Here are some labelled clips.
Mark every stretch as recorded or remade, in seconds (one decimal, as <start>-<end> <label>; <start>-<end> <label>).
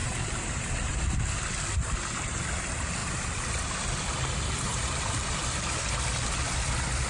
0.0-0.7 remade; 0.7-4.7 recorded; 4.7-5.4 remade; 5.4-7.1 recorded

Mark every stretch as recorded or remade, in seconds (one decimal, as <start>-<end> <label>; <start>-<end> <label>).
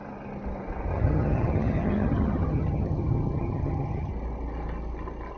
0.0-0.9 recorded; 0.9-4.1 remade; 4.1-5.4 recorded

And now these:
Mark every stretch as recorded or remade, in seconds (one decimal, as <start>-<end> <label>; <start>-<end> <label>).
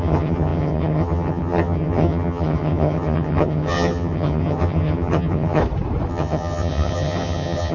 0.0-5.6 remade; 5.6-6.1 recorded; 6.1-7.7 remade